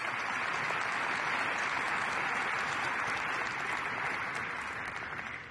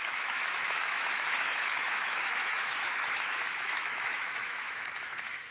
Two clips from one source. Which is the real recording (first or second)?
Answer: first